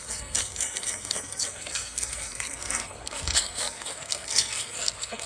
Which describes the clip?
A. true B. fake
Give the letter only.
B